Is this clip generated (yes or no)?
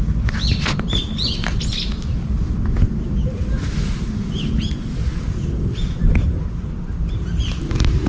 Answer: no